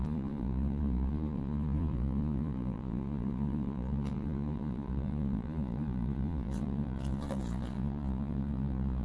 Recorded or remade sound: remade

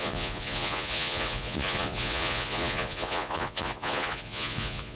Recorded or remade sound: remade